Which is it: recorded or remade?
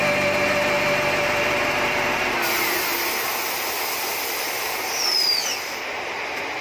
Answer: recorded